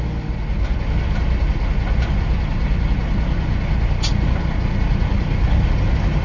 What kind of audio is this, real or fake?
real